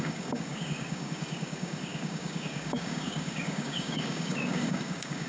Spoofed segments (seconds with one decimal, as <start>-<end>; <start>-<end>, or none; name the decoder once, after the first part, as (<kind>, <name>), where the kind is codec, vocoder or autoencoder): 0.0-5.3 (codec, DAC)